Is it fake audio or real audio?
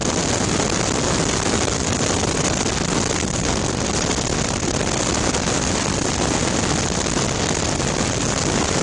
real